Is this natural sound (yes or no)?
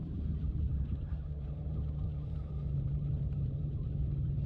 no